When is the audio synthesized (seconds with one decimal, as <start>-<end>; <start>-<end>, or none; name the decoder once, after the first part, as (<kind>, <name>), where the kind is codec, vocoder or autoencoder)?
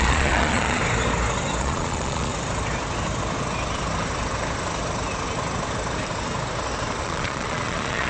0.0-0.8 (vocoder, Vocos); 1.6-2.3; 7.0-8.1